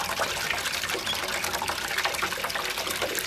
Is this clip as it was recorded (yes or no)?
yes